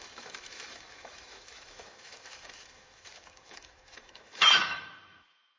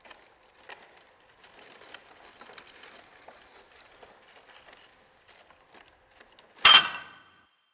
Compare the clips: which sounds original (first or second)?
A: second